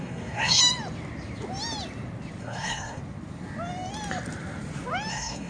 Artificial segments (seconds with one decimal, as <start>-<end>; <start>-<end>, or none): 0.0-0.6; 2.4-3.0; 5.1-5.5